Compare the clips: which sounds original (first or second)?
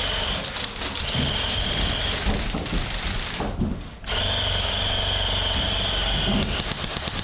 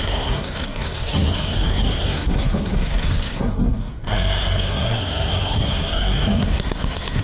first